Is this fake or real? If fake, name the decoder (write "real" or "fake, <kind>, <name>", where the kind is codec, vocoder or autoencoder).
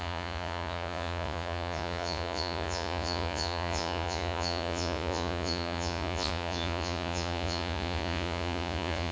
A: fake, vocoder, Vocos